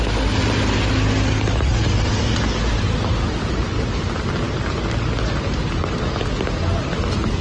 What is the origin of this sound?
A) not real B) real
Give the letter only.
B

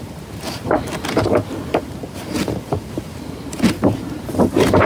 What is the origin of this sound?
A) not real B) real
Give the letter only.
A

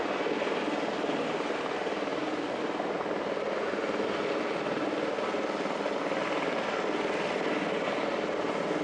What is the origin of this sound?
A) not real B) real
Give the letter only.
B